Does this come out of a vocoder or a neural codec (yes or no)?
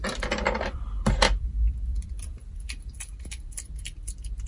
yes